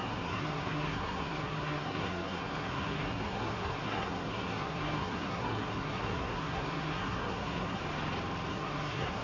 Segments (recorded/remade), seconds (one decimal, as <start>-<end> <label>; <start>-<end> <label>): 0.0-7.8 remade; 7.8-8.5 recorded; 8.5-9.2 remade